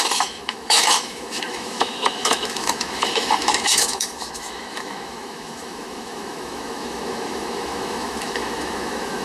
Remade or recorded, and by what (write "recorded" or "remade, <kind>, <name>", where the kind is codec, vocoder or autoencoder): remade, autoencoder, DAC-VAE